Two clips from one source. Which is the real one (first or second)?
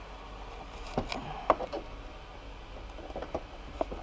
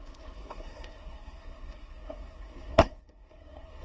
first